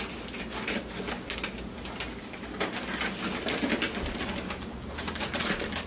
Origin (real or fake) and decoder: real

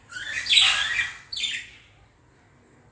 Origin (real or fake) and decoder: real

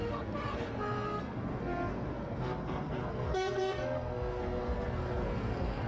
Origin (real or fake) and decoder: fake, codec, SNAC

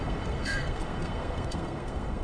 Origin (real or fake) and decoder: fake, codec, SNAC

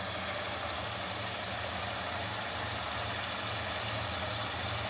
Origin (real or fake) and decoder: real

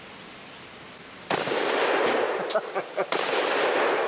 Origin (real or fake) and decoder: real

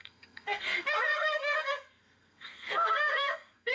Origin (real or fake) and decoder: fake, codec, SNAC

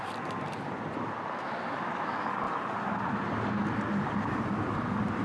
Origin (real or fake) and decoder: real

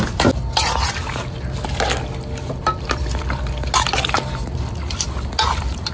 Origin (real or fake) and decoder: real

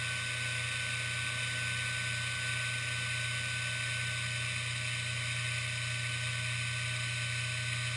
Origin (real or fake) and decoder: real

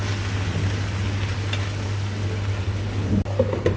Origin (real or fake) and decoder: real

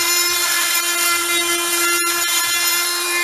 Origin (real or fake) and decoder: fake, vocoder, BigVGAN v2